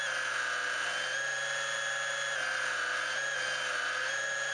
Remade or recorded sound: recorded